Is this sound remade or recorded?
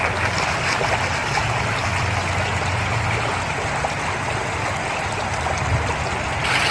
recorded